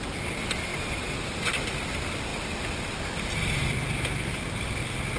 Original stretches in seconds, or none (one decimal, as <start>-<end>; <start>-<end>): 0.0-5.2